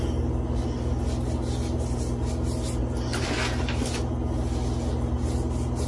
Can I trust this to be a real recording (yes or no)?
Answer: yes